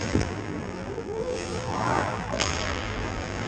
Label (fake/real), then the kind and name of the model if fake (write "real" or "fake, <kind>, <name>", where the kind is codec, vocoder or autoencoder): fake, vocoder, BigVGAN v2